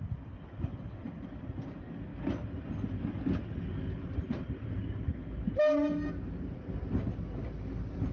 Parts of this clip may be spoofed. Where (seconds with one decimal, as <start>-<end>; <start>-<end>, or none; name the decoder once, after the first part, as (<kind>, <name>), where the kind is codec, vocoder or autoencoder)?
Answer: none